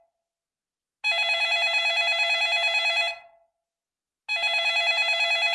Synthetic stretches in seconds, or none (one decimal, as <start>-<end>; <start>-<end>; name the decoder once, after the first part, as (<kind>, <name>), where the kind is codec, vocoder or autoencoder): none